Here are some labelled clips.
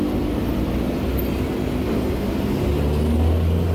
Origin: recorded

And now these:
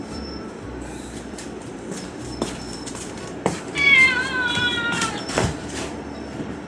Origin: remade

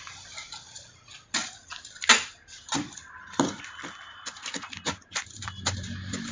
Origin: recorded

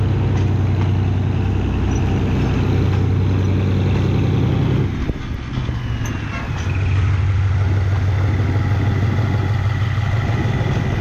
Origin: recorded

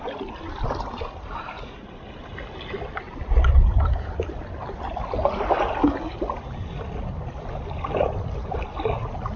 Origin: recorded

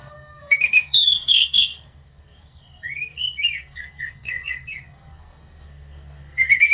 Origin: remade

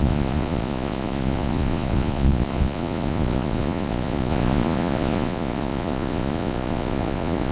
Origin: remade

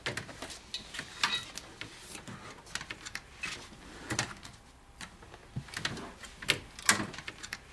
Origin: recorded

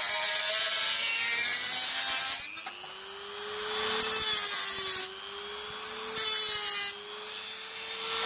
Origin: recorded